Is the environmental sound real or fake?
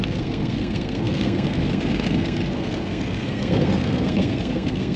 fake